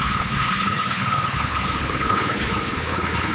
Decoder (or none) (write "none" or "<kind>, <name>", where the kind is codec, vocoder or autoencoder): codec, HILCodec